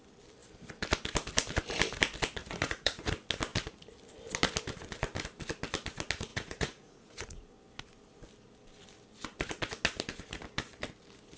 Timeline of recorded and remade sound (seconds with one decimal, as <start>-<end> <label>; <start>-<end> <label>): 0.0-2.4 recorded; 2.4-3.1 remade; 3.1-6.3 recorded; 6.3-7.5 remade; 7.5-11.4 recorded

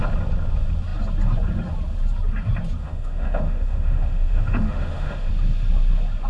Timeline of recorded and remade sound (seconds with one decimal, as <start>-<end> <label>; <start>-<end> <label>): 0.0-2.8 recorded; 2.8-5.3 remade; 5.3-6.3 recorded

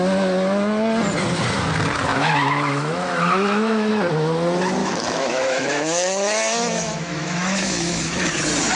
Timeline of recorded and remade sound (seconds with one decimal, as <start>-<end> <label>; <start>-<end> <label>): 0.0-2.1 recorded; 2.1-3.9 remade; 3.9-4.8 recorded; 4.8-8.3 remade; 8.3-8.8 recorded

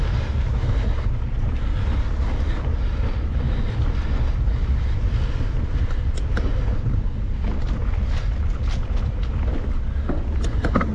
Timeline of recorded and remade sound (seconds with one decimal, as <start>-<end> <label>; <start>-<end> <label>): 0.0-10.9 recorded

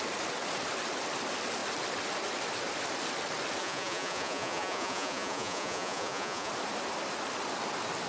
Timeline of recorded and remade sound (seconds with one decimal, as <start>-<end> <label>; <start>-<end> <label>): 0.0-3.6 recorded; 3.6-6.5 remade; 6.5-8.1 recorded

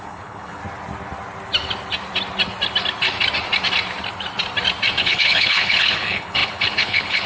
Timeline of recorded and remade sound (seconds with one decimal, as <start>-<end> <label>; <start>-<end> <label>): 0.0-0.6 remade; 0.6-5.0 recorded; 5.0-7.3 remade

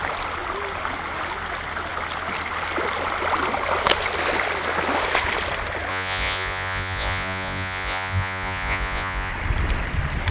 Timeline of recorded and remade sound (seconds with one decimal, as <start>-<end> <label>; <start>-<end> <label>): 0.0-5.9 recorded; 5.9-9.3 remade; 9.3-10.3 recorded

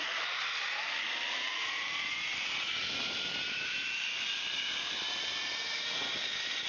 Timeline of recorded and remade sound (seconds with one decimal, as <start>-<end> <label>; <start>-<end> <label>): 0.0-4.3 recorded; 4.3-4.9 remade; 4.9-6.7 recorded